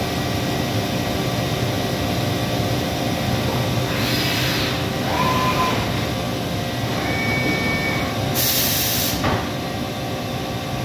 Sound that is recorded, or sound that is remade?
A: recorded